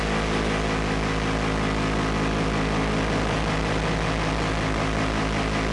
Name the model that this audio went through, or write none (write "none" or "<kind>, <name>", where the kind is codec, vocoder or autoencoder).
none